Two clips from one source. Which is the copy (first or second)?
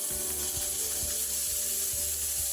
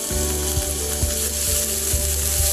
first